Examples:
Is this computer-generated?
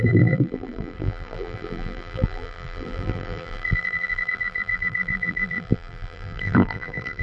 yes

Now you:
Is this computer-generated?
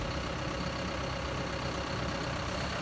no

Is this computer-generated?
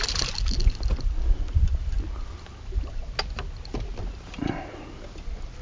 no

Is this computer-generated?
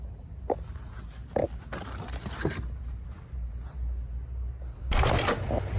no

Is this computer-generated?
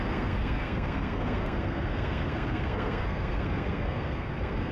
yes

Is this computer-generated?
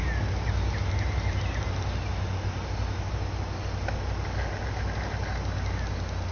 no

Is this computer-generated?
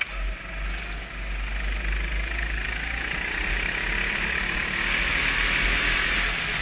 no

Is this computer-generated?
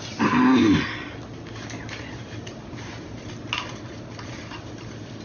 no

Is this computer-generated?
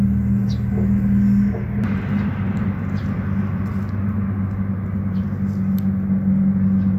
no